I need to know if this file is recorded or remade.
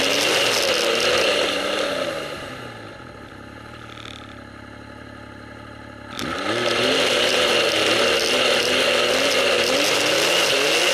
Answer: recorded